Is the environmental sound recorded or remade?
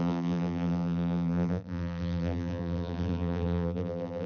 remade